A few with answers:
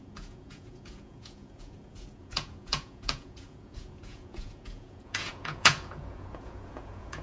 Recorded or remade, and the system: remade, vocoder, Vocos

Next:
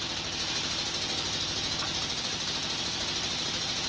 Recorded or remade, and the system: remade, vocoder, BigVGAN v2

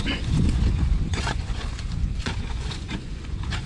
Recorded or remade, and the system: remade, vocoder, Vocos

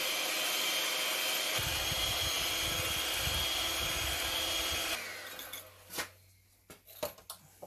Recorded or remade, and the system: recorded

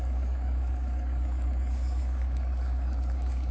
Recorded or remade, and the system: remade, codec, DAC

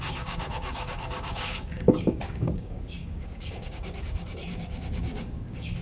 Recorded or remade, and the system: remade, codec, DAC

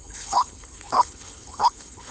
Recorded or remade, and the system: remade, codec, HILCodec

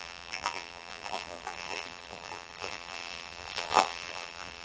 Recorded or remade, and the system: remade, vocoder, BigVGAN v2